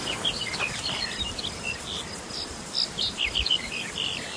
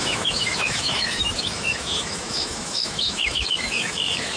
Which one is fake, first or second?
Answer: second